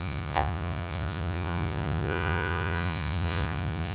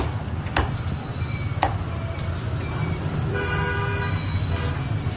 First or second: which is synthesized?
first